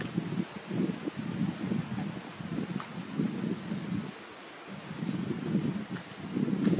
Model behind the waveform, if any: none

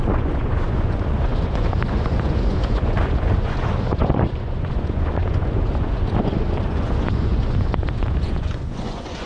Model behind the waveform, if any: vocoder, Vocos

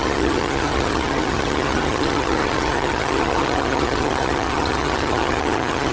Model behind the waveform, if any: vocoder, HiFi-GAN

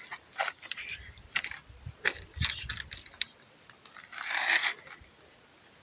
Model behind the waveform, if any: none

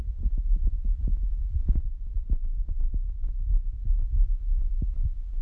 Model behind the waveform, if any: none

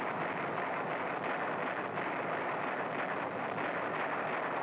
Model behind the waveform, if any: none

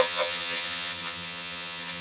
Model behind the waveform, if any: vocoder, HiFi-GAN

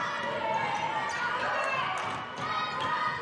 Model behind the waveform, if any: none